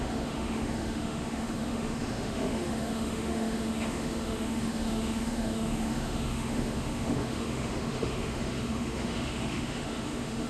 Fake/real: fake